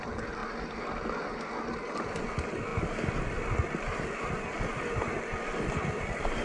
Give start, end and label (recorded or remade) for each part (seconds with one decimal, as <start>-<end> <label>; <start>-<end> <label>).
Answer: 0.0-6.4 recorded